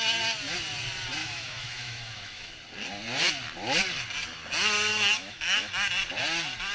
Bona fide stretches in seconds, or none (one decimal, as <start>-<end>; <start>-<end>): 0.0-1.2; 2.5-4.9; 5.7-6.7